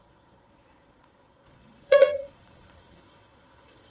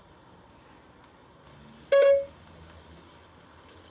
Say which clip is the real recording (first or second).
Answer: second